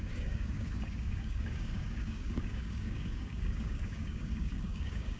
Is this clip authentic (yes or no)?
no